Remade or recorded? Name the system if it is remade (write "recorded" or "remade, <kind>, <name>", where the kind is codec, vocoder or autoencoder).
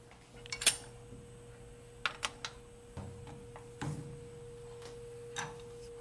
recorded